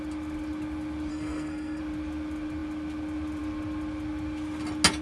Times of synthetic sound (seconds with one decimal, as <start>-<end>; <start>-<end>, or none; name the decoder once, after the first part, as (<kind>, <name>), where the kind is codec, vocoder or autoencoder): 1.1-1.8 (codec, SNAC)